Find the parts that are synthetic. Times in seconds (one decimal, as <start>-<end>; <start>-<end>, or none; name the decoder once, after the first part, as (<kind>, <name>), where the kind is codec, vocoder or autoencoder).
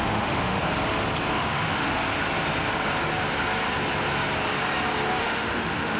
0.0-0.6 (autoencoder, DAC-VAE); 1.3-2.0; 5.2-6.0